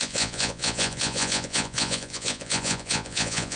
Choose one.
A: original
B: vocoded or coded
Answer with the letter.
B